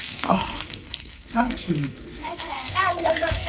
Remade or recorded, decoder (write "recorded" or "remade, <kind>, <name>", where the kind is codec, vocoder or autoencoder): remade, codec, SNAC